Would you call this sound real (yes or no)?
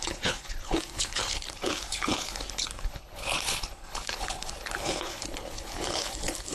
no